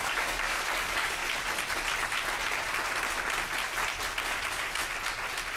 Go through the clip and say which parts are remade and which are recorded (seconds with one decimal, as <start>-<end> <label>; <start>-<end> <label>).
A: 0.0-1.2 remade; 1.2-4.2 recorded; 4.2-4.8 remade; 4.8-5.6 recorded